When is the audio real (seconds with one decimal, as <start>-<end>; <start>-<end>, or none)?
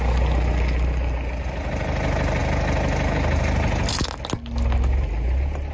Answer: 0.0-5.7